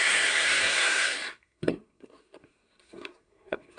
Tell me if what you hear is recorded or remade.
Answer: remade